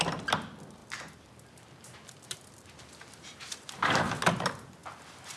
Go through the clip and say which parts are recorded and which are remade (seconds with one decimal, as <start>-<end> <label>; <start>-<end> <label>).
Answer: 0.0-0.8 recorded; 0.8-4.0 remade; 4.0-4.8 recorded; 4.8-5.4 remade